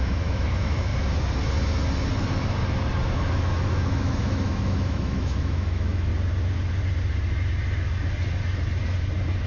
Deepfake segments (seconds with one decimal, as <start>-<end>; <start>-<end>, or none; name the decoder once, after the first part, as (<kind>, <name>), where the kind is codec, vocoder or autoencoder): 0.0-0.9 (autoencoder, DAC-VAE); 3.1-6.1